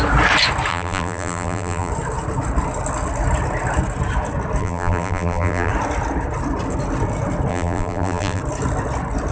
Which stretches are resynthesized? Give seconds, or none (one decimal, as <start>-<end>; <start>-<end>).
0.7-1.9; 4.6-5.7; 7.5-8.4